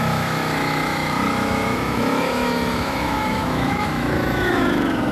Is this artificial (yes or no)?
yes